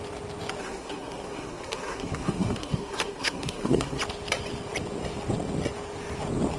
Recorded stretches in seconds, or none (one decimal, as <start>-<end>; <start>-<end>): 0.0-0.6; 4.0-6.6